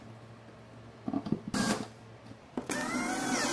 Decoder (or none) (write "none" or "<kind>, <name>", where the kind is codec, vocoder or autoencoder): none